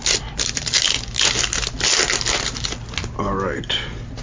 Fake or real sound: real